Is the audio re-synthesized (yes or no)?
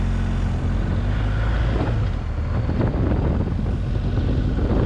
no